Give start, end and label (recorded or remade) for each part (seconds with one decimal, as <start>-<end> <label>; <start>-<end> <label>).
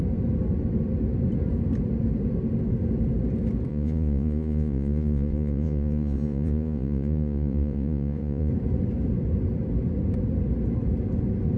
0.0-3.7 recorded; 3.7-8.5 remade; 8.5-11.6 recorded